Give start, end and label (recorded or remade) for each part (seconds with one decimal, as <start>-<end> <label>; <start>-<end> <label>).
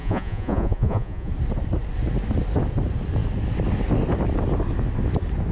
0.0-1.3 remade; 1.3-5.5 recorded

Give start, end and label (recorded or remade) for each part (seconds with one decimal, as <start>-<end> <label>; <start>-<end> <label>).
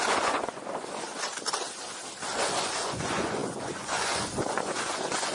0.0-1.1 remade; 1.1-2.3 recorded; 2.3-5.3 remade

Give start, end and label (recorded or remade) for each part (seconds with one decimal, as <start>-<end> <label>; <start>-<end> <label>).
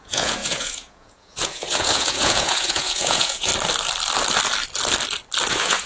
0.0-3.5 remade; 3.5-5.5 recorded; 5.5-5.9 remade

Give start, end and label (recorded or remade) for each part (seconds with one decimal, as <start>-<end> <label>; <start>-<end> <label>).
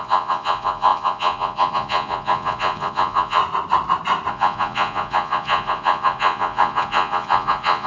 0.0-3.4 remade; 3.4-4.3 recorded; 4.3-7.9 remade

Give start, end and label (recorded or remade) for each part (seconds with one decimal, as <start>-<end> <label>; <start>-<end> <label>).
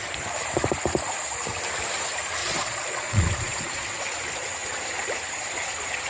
0.0-2.4 recorded; 2.4-4.0 remade; 4.0-6.1 recorded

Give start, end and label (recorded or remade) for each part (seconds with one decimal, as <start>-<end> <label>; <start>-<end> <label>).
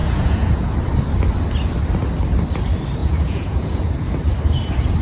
0.0-0.7 remade; 0.7-3.0 recorded; 3.0-3.9 remade; 3.9-5.0 recorded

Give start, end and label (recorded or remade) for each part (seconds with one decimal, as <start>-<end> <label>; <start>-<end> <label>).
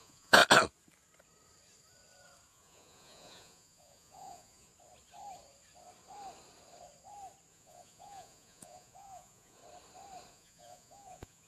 0.0-0.4 remade; 0.4-2.5 recorded; 2.5-4.7 remade; 4.7-7.5 recorded; 7.5-9.6 remade; 9.6-10.3 recorded; 10.3-11.5 remade